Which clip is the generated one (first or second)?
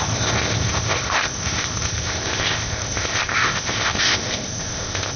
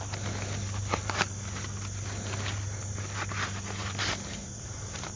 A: first